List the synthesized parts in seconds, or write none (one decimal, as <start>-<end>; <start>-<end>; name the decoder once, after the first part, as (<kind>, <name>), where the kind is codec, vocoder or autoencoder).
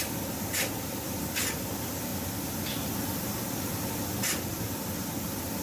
0.0-2.1 (vocoder, BigVGAN v2)